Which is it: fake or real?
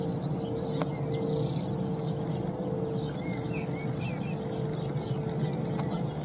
real